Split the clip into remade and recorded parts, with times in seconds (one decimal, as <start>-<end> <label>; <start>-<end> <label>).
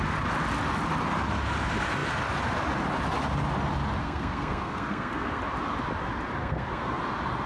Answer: 0.0-4.0 recorded; 4.0-5.4 remade; 5.4-6.4 recorded; 6.4-7.0 remade; 7.0-7.5 recorded